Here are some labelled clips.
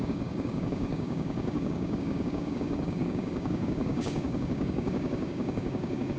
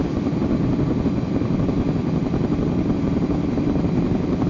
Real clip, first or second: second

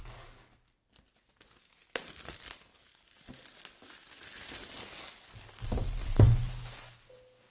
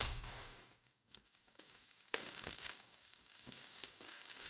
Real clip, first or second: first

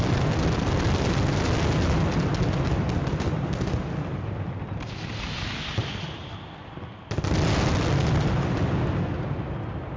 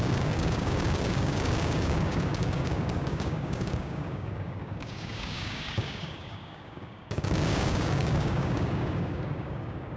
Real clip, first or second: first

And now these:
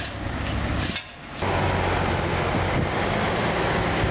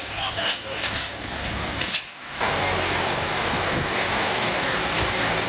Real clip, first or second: first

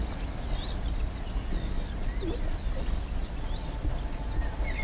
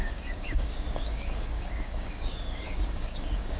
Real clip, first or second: first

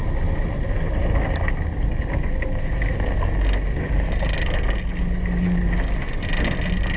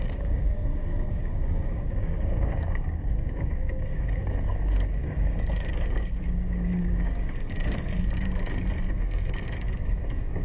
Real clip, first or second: first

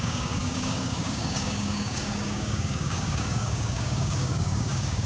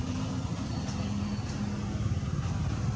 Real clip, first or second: second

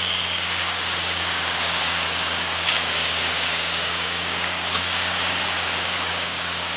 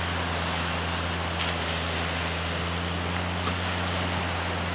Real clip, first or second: second